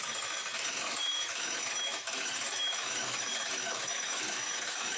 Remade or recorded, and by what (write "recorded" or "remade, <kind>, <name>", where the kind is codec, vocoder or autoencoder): remade, autoencoder, DAC-VAE